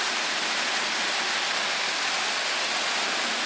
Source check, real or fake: real